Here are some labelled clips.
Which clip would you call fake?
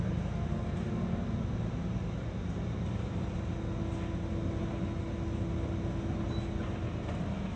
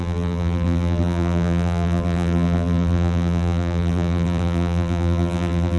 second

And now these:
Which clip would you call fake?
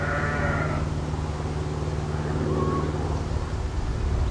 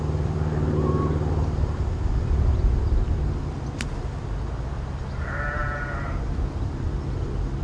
second